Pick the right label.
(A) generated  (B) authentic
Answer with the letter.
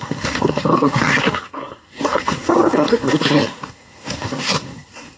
A